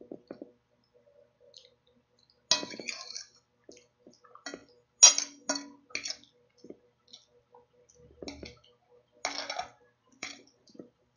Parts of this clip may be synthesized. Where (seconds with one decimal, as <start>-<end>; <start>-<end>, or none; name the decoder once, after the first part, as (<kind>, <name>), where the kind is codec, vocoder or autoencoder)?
10.0-11.2 (vocoder, BigVGAN v2)